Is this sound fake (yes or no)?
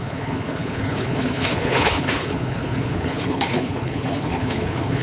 yes